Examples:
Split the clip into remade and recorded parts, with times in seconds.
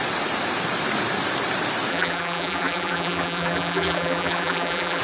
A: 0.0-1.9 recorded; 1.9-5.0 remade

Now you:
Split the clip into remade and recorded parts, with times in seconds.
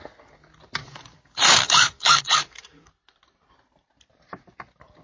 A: 0.0-0.8 recorded; 0.8-2.9 remade; 2.9-5.0 recorded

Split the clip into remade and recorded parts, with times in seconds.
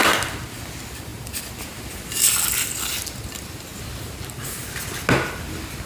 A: 0.0-5.9 recorded